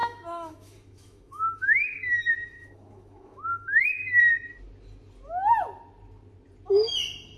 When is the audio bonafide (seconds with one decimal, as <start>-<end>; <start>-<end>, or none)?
4.2-7.4